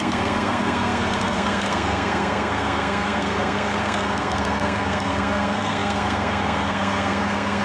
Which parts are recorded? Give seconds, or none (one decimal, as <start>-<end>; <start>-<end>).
none